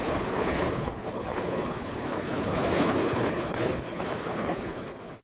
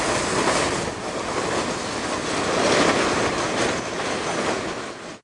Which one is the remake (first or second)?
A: first